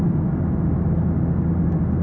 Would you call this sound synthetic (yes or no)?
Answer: no